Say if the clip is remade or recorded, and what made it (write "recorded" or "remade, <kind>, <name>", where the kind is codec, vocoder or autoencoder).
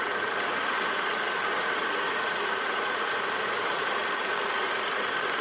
remade, vocoder, Vocos